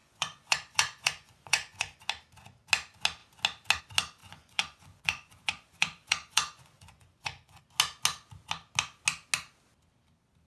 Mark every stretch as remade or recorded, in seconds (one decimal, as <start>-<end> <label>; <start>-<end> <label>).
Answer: 0.0-2.0 remade; 2.0-4.2 recorded; 4.2-7.6 remade; 7.6-10.5 recorded